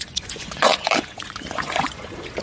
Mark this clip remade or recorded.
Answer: remade